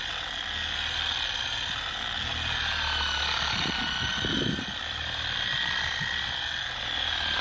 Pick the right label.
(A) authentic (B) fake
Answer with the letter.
A